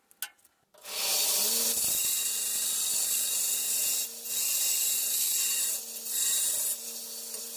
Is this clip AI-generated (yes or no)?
no